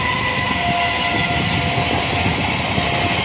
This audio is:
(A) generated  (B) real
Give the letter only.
B